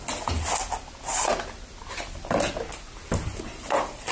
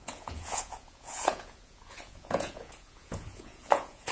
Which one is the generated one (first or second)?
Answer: second